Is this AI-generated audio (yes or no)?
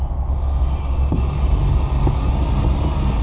no